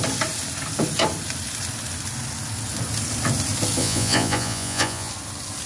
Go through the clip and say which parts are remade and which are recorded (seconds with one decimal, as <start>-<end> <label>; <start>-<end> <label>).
0.0-3.8 recorded; 3.8-5.1 remade; 5.1-5.7 recorded